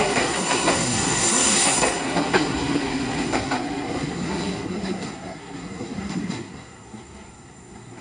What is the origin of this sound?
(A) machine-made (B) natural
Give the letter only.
A